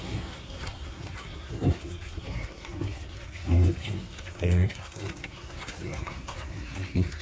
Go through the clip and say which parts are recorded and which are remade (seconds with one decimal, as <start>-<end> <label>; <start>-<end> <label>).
0.0-7.2 remade